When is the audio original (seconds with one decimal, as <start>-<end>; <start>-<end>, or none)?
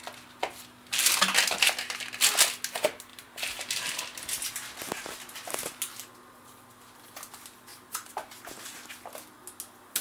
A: 0.0-3.1; 4.0-7.7; 8.9-10.0